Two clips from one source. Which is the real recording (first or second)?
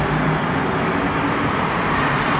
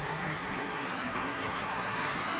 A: first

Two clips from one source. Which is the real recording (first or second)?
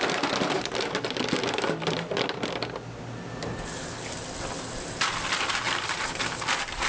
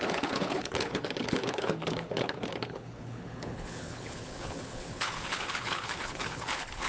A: first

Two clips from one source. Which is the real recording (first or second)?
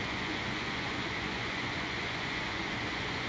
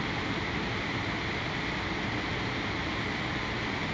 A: second